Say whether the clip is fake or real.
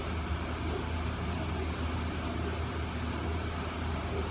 real